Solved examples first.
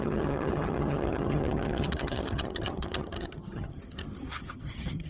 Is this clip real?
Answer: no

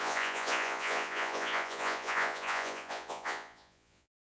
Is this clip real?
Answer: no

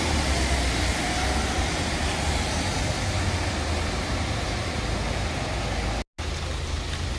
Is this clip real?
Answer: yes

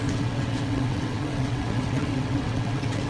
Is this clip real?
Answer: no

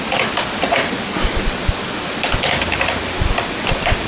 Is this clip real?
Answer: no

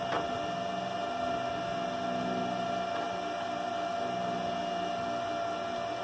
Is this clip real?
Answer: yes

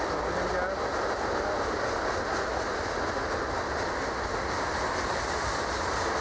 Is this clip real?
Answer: yes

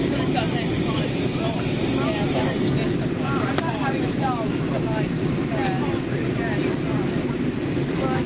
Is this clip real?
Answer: yes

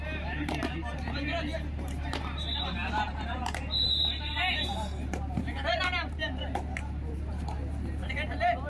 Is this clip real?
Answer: no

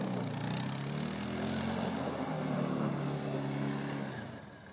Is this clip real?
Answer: yes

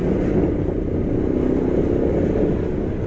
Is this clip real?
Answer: yes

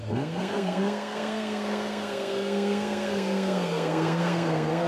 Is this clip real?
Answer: no